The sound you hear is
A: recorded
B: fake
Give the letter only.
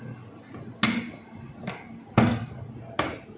A